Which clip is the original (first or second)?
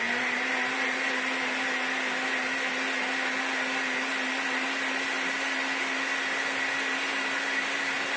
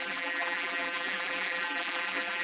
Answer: first